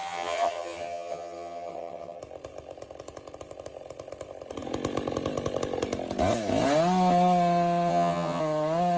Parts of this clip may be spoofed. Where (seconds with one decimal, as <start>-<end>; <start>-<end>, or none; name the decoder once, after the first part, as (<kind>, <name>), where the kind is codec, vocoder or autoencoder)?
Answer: 0.0-2.2 (vocoder, HiFi-GAN); 7.9-8.4